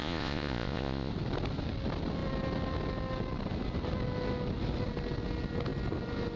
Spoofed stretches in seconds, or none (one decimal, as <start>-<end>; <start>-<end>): 0.0-1.1